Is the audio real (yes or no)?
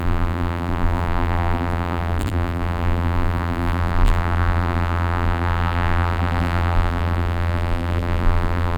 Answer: no